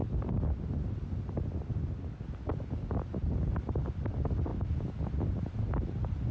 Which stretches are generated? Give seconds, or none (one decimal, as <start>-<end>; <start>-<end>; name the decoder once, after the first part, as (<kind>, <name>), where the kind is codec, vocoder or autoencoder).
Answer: 0.0-6.3 (vocoder, BigVGAN v2)